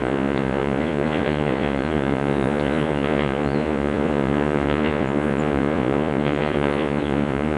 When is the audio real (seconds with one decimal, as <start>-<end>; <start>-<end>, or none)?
none